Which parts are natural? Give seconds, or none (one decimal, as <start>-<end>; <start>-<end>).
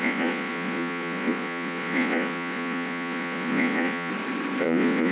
4.1-4.6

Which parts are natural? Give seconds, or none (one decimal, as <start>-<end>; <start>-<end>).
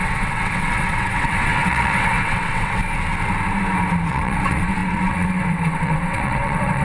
2.8-4.1